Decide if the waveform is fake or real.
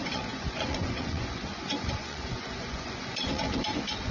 fake